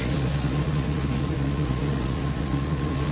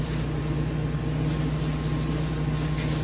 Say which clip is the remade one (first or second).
first